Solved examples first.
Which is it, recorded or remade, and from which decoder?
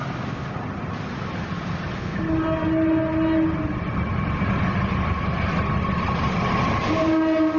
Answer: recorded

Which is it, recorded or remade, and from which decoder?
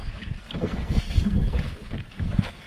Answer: remade, codec, SNAC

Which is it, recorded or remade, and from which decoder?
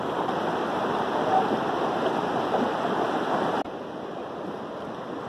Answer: recorded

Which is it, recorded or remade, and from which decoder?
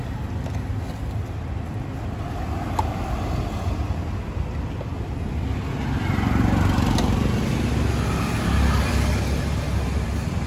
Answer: recorded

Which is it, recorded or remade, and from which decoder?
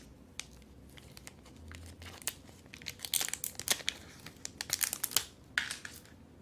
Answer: recorded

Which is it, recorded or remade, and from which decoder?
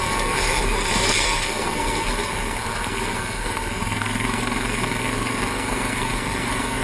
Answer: remade, codec, SNAC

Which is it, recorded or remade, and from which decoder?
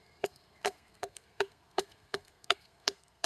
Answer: remade, codec, SNAC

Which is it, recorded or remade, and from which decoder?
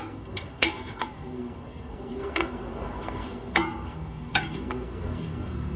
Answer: remade, codec, SNAC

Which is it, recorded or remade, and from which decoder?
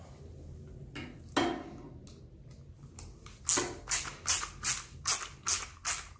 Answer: recorded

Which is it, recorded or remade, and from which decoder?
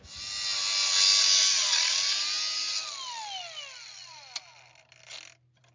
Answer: recorded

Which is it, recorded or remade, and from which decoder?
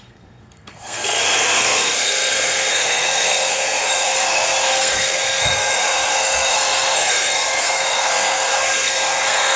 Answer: remade, codec, SNAC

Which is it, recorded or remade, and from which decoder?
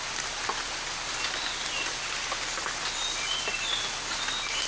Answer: recorded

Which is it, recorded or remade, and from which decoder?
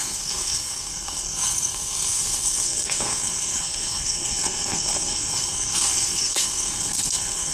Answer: remade, codec, SNAC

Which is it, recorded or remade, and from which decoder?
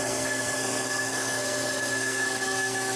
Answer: remade, codec, SNAC